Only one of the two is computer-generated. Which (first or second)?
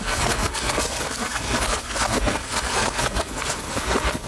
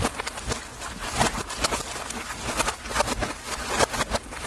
first